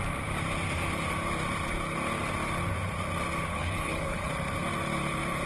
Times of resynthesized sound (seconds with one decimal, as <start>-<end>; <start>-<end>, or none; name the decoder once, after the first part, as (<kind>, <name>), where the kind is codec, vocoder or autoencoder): 3.5-4.3 (codec, HILCodec)

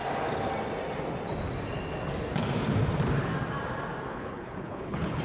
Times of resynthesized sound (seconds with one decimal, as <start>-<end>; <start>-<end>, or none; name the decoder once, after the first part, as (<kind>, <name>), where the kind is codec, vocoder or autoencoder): 4.1-5.2 (codec, HILCodec)

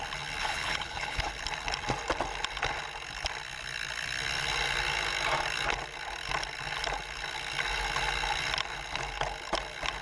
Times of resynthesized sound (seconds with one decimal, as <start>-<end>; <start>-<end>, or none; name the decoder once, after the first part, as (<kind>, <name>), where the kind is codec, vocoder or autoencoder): 0.4-1.3 (codec, HILCodec)

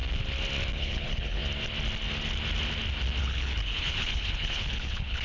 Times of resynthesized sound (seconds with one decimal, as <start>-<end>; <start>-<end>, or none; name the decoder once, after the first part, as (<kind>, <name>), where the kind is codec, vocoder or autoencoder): 0.7-1.4 (codec, HILCodec); 3.2-5.2

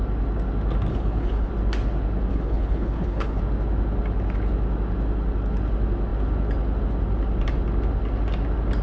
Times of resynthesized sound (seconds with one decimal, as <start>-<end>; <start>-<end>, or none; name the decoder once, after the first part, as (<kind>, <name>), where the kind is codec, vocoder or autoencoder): 0.9-1.5 (codec, HILCodec); 2.3-3.4